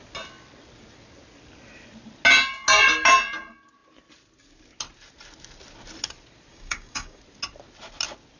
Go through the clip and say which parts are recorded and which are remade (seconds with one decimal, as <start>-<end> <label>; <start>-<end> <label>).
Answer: 0.0-6.5 recorded; 6.5-7.2 remade; 7.2-8.4 recorded